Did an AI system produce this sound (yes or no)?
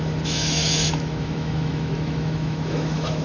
yes